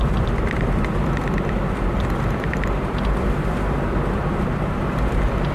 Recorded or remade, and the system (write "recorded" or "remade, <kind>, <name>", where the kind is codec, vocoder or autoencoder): remade, vocoder, BigVGAN v2